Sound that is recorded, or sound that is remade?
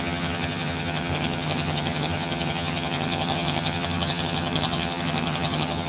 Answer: remade